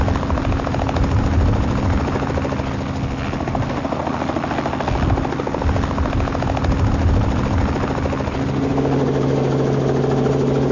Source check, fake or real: real